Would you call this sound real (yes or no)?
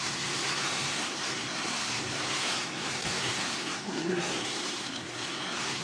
no